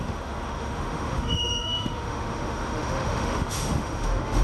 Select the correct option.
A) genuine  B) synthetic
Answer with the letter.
B